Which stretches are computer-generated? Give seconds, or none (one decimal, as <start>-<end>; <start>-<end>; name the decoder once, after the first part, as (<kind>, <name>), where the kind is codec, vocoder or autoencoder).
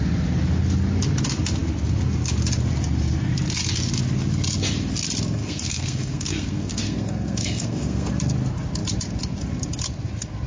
5.4-8.1 (codec, SNAC)